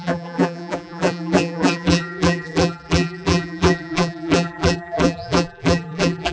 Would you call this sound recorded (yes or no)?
no